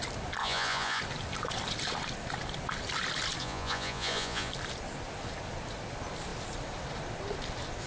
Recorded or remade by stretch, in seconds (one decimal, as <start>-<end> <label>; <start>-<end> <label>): 0.0-0.4 recorded; 0.4-1.0 remade; 1.0-3.4 recorded; 3.4-4.5 remade; 4.5-7.9 recorded